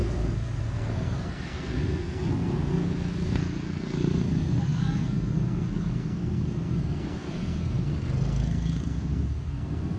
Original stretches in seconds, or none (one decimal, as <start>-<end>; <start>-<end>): none

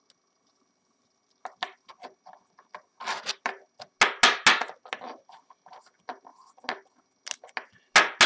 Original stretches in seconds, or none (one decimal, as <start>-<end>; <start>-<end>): 0.0-8.3

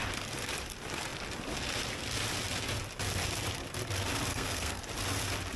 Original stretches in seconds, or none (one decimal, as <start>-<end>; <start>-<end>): 0.0-4.3; 4.8-5.6

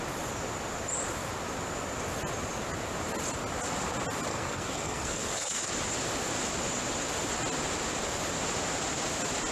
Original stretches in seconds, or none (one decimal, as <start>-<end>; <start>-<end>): 0.0-4.3; 5.7-9.5